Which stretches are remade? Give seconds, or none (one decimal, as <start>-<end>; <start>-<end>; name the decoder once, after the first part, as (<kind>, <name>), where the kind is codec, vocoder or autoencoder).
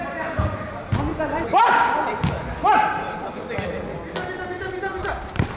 1.1-1.7 (vocoder, BigVGAN v2)